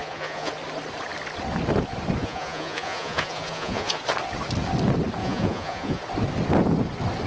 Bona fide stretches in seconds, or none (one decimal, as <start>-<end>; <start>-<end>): 0.5-2.2; 4.0-5.2; 6.0-7.3